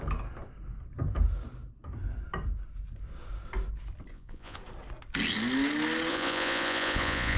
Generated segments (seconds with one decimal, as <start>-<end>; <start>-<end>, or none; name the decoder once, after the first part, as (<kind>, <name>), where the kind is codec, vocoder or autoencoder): 4.1-4.6 (vocoder, Vocos); 6.1-7.4